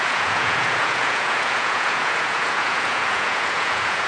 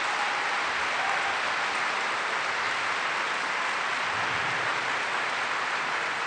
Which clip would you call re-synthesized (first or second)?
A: first